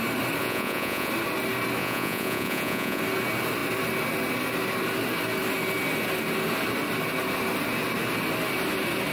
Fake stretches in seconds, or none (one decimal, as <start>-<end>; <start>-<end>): 0.4-1.1; 1.8-3.0